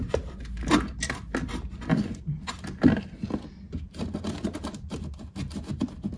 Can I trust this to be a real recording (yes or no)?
yes